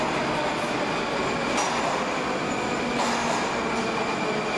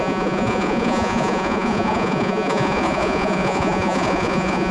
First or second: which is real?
first